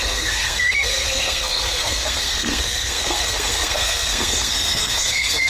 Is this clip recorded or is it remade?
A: remade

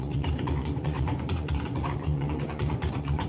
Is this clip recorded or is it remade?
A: remade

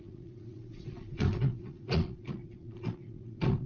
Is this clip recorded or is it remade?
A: remade